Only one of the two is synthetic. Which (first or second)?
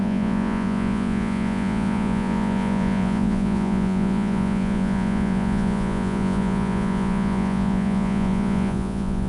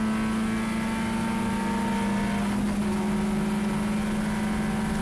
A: first